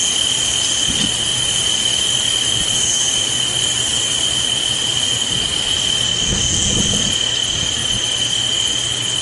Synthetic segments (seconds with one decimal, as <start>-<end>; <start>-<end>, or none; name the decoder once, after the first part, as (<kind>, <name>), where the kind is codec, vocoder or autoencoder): 1.3-5.7 (vocoder, BigVGAN v2)